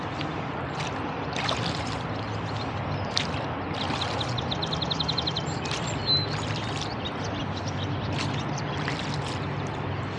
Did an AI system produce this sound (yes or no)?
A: yes